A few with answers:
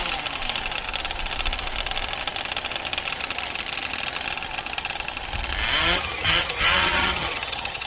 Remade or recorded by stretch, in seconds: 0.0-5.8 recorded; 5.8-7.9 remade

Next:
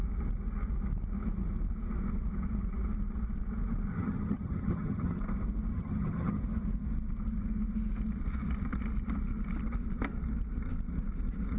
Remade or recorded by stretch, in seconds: 0.0-3.9 recorded; 3.9-5.2 remade; 5.2-5.7 recorded; 5.7-6.4 remade; 6.4-11.6 recorded

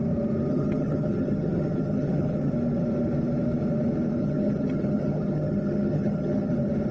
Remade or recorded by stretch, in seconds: 0.0-0.5 recorded; 0.5-2.5 remade; 2.5-4.2 recorded; 4.2-6.5 remade; 6.5-6.9 recorded

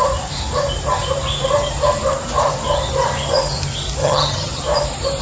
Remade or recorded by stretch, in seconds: 0.0-4.0 recorded; 4.0-4.6 remade; 4.6-5.2 recorded

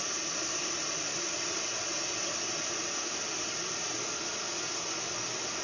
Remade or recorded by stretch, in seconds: 0.0-5.6 recorded

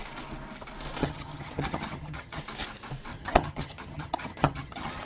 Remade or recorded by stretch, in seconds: 0.0-1.0 recorded; 1.0-2.4 remade; 2.4-3.1 recorded; 3.1-5.1 remade